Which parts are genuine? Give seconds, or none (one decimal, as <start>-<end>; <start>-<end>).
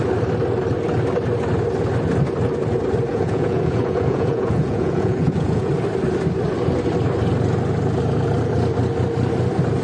0.0-3.1; 5.7-9.8